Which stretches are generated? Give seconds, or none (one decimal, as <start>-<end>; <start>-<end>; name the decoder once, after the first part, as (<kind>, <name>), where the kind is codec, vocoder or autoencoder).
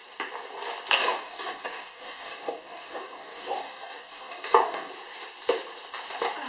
1.0-4.9 (codec, DAC)